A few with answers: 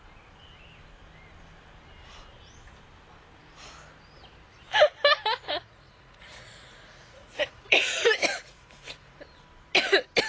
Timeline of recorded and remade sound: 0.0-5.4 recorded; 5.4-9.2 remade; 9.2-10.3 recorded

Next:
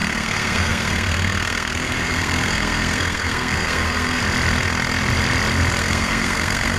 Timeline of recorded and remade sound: 0.0-4.2 remade; 4.2-5.8 recorded; 5.8-6.8 remade

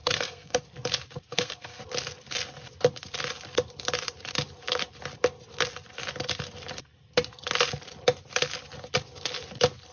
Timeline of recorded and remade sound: 0.0-0.6 remade; 0.6-1.3 recorded; 1.3-1.8 remade; 1.8-9.9 recorded

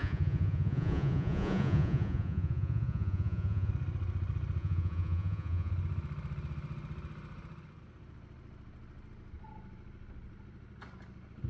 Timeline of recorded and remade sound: 0.0-3.7 remade; 3.7-4.6 recorded; 4.6-5.7 remade; 5.7-11.5 recorded